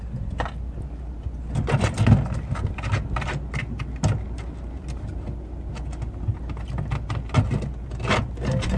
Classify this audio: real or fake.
real